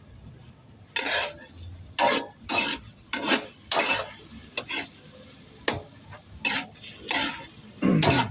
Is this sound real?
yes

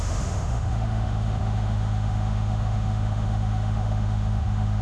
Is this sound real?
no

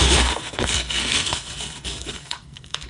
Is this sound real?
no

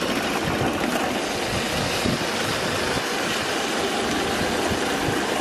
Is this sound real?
yes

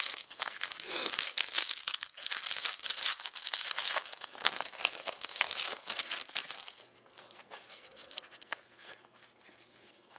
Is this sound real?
no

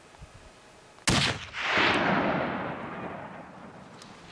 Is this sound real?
yes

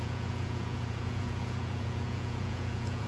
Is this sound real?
no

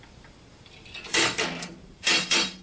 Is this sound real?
no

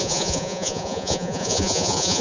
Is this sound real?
no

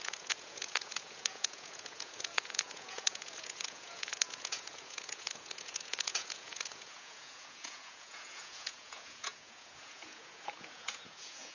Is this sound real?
no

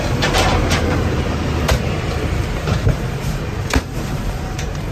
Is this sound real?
no